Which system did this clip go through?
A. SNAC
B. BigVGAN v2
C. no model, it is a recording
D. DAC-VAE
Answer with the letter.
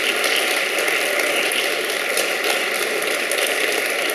C